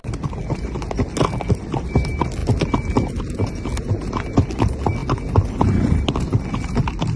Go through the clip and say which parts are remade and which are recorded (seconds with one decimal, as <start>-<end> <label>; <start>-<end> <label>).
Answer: 0.0-7.2 recorded